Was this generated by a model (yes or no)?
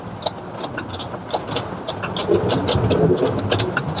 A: no